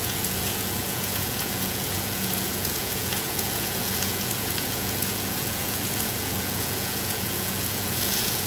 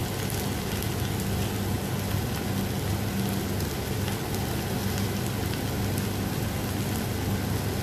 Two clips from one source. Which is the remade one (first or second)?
first